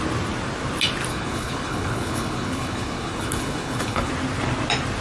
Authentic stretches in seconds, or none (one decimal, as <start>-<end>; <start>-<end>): 0.0-1.1; 4.1-5.0